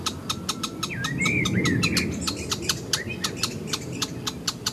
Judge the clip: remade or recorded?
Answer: recorded